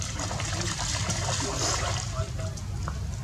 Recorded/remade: recorded